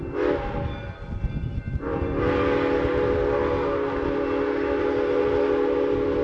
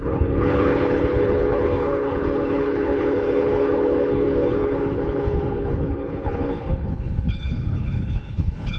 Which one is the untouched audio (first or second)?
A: first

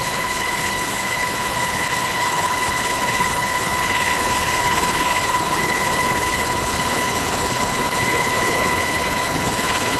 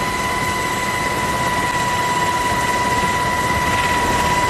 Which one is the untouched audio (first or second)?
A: second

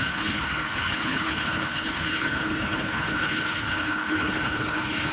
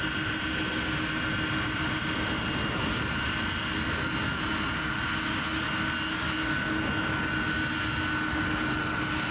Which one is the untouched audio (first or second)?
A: second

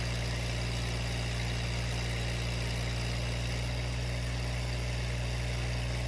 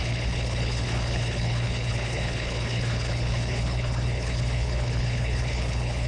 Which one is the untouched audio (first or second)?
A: first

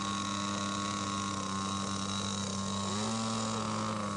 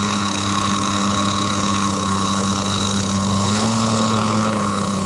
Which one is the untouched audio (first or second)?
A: first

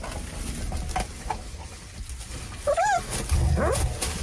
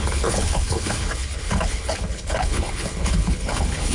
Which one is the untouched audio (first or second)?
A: first